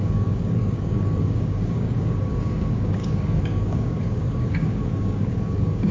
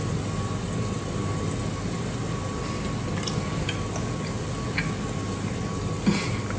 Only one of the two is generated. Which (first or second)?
first